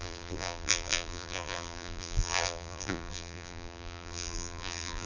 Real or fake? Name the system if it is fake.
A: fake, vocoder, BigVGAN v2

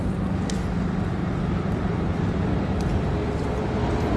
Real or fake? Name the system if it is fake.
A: real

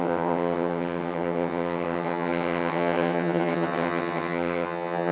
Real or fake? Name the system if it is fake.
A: fake, vocoder, HiFi-GAN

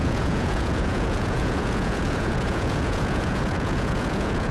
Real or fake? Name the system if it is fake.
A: fake, vocoder, Vocos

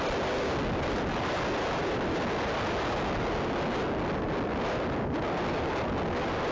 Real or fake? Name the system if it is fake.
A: real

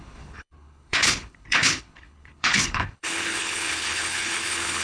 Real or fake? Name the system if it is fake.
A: fake, codec, HILCodec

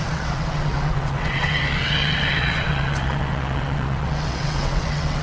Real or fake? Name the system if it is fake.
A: fake, vocoder, WaveNeXt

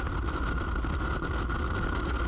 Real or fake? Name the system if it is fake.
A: real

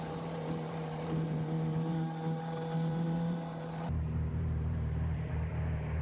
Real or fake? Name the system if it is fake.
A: fake, vocoder, BigVGAN v2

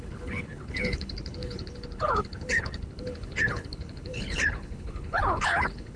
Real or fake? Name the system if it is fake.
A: fake, codec, HILCodec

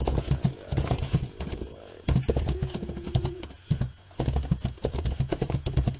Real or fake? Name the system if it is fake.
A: fake, vocoder, Vocos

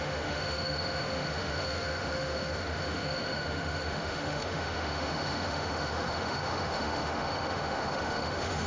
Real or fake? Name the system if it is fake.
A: fake, autoencoder, DAC-VAE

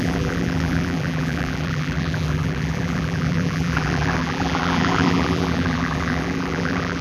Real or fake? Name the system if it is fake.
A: fake, vocoder, BigVGAN v2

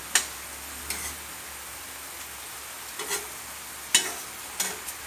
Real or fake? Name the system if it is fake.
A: real